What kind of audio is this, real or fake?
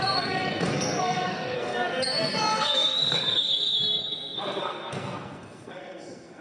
fake